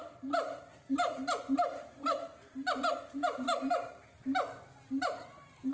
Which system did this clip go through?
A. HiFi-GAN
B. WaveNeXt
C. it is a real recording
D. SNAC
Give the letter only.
C